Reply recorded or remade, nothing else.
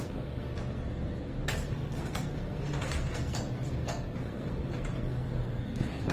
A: remade